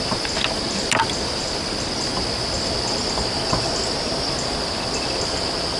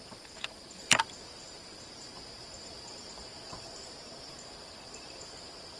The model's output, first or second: second